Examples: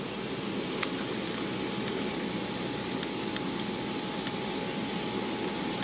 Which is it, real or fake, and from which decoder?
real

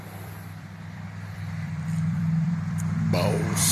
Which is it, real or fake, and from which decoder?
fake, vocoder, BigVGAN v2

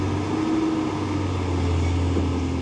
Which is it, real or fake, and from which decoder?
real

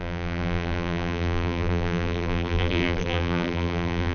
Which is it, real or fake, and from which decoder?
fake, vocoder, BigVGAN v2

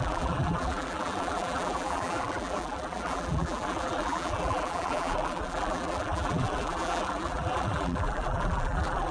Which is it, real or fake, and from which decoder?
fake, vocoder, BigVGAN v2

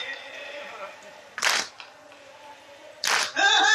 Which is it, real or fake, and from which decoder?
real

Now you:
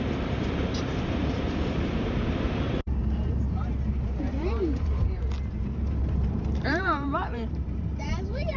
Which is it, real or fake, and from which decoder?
fake, vocoder, BigVGAN v2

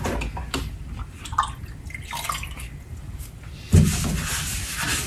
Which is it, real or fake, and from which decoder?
real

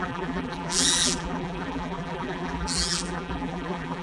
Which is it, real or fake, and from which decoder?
fake, vocoder, BigVGAN v2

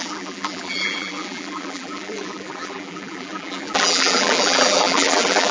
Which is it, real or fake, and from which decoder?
fake, vocoder, BigVGAN v2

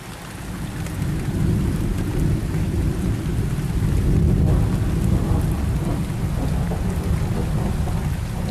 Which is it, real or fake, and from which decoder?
real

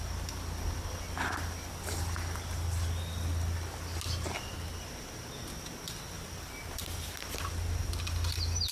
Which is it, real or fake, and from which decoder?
real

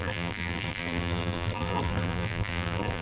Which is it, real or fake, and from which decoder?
fake, vocoder, BigVGAN v2